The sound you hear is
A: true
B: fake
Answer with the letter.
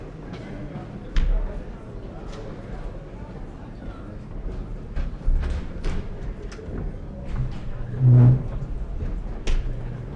A